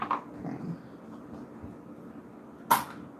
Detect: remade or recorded recorded